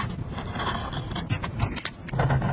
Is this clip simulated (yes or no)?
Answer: no